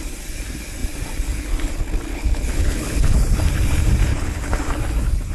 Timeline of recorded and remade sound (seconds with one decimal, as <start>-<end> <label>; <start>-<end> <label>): 0.0-2.1 recorded; 2.1-3.2 remade; 3.2-4.1 recorded; 4.1-4.6 remade; 4.6-5.3 recorded